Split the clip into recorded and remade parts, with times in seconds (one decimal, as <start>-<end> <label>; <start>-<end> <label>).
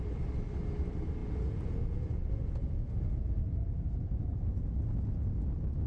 0.0-1.2 recorded; 1.2-4.7 remade; 4.7-5.9 recorded